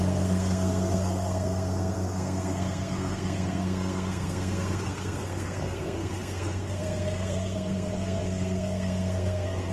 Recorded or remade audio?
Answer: remade